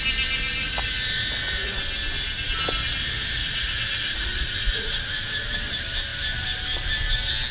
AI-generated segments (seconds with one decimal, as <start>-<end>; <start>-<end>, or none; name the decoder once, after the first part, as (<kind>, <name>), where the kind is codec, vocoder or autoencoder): 0.6-1.8 (vocoder, Vocos); 3.4-5.5